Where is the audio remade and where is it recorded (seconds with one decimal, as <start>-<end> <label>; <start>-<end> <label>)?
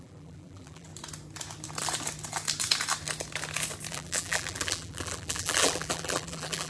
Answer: 0.0-0.9 remade; 0.9-3.9 recorded; 3.9-6.7 remade